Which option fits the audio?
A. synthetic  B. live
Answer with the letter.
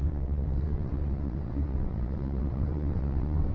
A